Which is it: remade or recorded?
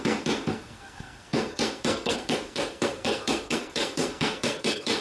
remade